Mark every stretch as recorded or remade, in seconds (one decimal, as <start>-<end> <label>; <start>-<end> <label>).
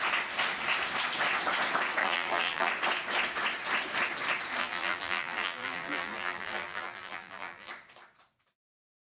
0.0-2.0 recorded; 2.0-2.7 remade; 2.7-4.6 recorded; 4.6-7.7 remade; 7.7-9.1 recorded